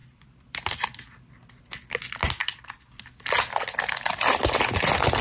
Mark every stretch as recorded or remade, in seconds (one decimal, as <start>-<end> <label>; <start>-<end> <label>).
0.0-1.0 remade; 1.0-2.4 recorded; 2.4-4.5 remade; 4.5-5.2 recorded

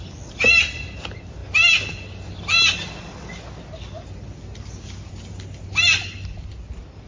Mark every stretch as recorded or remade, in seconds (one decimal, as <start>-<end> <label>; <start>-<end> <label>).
0.0-7.1 recorded

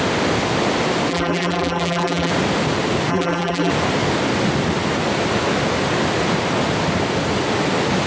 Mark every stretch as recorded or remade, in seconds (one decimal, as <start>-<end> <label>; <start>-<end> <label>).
0.0-1.1 recorded; 1.1-2.3 remade; 2.3-3.1 recorded; 3.1-3.7 remade; 3.7-8.1 recorded

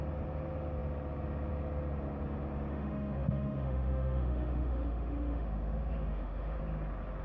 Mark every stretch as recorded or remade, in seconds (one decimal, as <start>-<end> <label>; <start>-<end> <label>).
0.0-2.7 recorded; 2.7-6.6 remade; 6.6-7.2 recorded

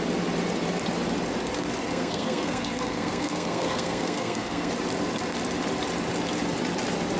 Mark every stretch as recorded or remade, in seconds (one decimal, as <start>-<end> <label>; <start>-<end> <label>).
0.0-1.9 recorded; 1.9-4.7 remade; 4.7-7.2 recorded

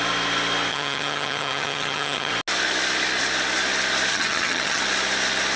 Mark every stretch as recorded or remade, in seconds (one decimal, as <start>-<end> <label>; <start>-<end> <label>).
0.0-0.7 recorded; 0.7-2.3 remade; 2.3-4.1 recorded; 4.1-4.8 remade; 4.8-5.6 recorded